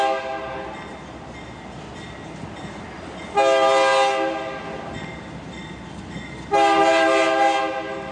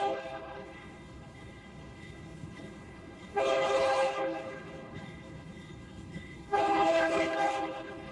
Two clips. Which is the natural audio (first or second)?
first